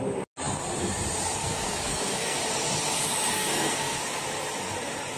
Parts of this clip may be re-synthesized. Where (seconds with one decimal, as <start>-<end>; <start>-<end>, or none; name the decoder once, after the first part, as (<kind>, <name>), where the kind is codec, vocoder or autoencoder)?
1.4-2.4 (codec, SNAC); 3.3-4.0